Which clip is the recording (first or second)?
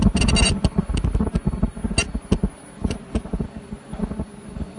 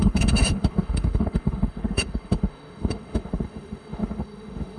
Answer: first